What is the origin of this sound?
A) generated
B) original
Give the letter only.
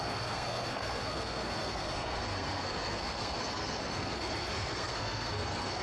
A